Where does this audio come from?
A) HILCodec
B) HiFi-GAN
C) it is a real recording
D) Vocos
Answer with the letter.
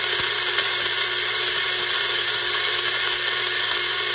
C